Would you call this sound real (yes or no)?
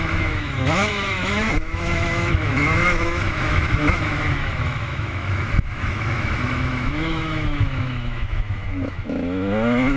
no